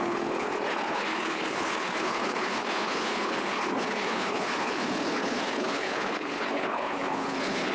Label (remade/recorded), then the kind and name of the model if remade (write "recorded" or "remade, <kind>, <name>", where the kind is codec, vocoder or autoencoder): remade, codec, HILCodec